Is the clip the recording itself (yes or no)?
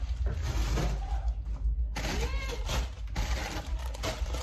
yes